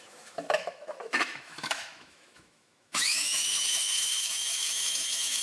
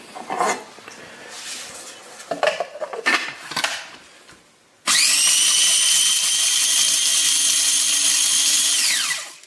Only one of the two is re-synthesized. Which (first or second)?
first